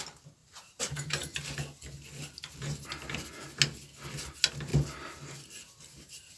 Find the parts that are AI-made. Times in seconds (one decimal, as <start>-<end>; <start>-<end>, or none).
0.4-1.4; 4.7-6.4